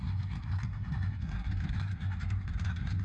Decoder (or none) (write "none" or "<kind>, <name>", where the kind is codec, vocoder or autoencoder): codec, SNAC